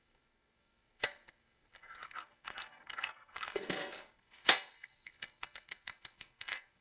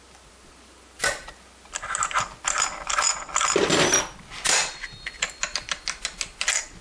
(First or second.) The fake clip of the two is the first